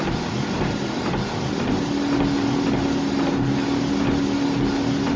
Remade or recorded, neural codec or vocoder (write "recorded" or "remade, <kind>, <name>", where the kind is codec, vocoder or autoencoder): recorded